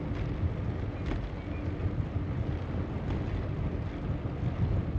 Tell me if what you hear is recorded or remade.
recorded